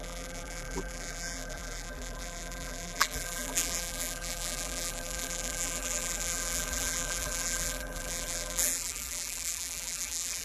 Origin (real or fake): fake